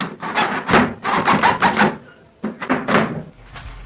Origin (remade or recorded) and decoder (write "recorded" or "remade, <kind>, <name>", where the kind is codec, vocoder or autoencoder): recorded